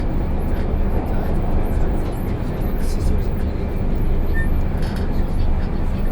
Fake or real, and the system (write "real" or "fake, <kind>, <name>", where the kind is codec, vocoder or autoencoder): real